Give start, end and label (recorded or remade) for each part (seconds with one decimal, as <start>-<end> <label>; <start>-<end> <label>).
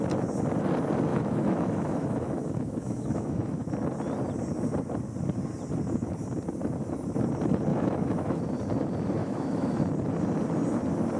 0.0-1.1 recorded; 1.1-3.7 remade; 3.7-7.7 recorded; 7.7-8.4 remade; 8.4-9.2 recorded; 9.2-9.8 remade; 9.8-11.2 recorded